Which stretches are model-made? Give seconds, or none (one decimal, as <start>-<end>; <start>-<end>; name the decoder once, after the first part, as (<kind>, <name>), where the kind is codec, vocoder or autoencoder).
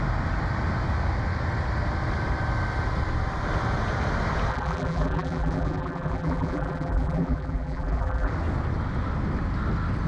4.5-8.3 (vocoder, BigVGAN v2)